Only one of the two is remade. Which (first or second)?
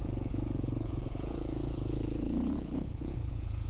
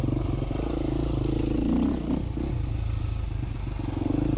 first